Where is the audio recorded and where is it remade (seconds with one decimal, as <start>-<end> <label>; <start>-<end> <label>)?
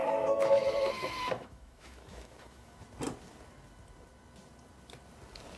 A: 0.0-2.8 remade; 2.8-5.6 recorded